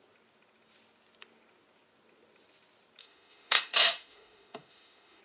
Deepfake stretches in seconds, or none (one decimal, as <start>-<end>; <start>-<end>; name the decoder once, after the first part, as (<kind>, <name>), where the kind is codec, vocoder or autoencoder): 3.0-5.2 (autoencoder, DAC-VAE)